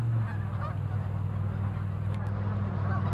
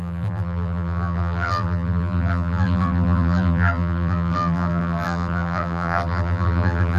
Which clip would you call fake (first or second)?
second